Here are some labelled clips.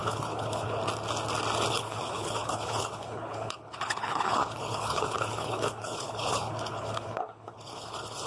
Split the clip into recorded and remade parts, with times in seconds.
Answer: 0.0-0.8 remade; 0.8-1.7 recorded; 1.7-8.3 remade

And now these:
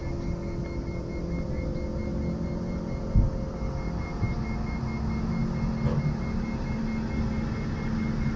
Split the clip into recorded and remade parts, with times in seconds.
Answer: 0.0-8.4 recorded

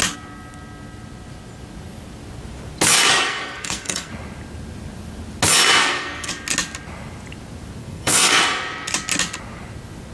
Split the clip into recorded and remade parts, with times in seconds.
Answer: 0.0-3.1 recorded; 3.1-4.1 remade; 4.1-5.8 recorded; 5.8-6.3 remade; 6.3-7.8 recorded; 7.8-8.4 remade; 8.4-10.1 recorded

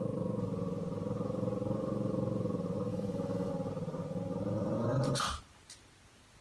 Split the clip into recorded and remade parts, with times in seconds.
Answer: 0.0-2.9 recorded; 2.9-3.5 remade; 3.5-6.4 recorded

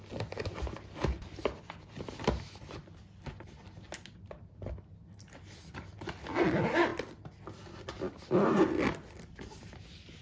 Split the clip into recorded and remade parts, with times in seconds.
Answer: 0.0-10.2 recorded

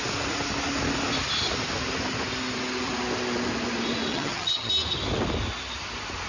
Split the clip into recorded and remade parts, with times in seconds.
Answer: 0.0-4.1 recorded; 4.1-4.7 remade; 4.7-6.3 recorded

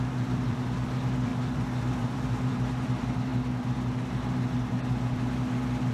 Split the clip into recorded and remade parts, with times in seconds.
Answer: 0.0-3.3 remade; 3.3-5.9 recorded

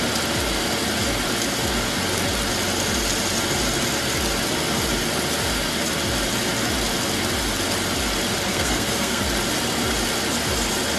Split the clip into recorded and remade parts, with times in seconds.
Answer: 0.0-8.5 recorded; 8.5-9.2 remade; 9.2-11.0 recorded